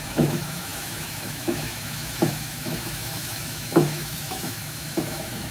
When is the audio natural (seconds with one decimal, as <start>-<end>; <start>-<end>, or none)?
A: none